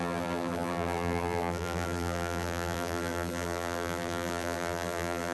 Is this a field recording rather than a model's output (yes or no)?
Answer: no